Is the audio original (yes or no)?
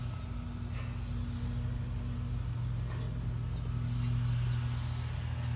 yes